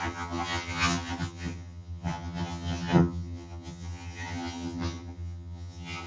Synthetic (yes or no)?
yes